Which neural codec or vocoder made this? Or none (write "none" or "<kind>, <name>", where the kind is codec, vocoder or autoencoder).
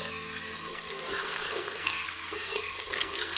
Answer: codec, SNAC